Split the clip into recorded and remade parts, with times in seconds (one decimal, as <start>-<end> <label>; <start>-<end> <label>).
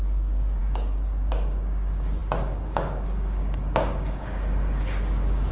0.0-5.5 remade